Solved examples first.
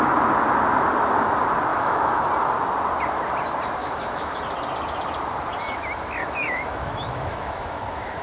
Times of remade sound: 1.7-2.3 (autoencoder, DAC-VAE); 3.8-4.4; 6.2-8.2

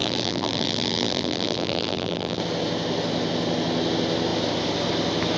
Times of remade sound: 0.0-2.4 (vocoder, BigVGAN v2)

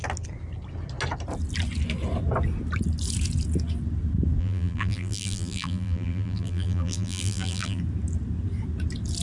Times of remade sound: 4.4-7.8 (vocoder, BigVGAN v2)

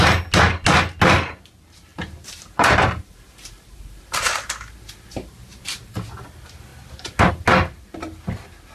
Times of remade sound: 1.9-5.9 (vocoder, BigVGAN v2)

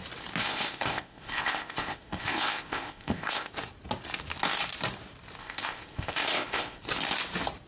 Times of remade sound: 0.4-3.5 (codec, ZipCodec); 5.4-6.8

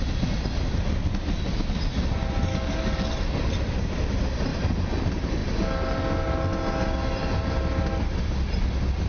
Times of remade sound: 2.5-3.1 (codec, DAC)